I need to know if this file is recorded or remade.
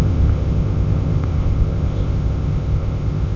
remade